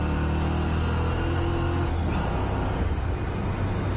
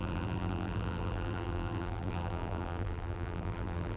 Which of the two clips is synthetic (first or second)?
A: second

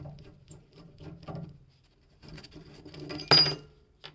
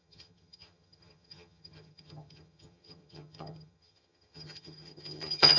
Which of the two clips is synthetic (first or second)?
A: second